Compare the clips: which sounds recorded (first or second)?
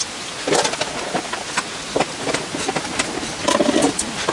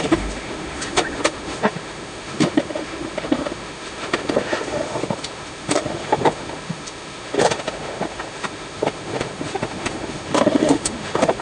first